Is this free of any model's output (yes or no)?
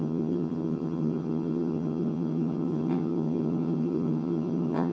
no